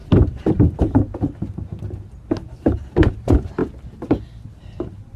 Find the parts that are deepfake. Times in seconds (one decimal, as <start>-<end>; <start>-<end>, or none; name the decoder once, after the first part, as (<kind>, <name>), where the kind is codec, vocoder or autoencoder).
none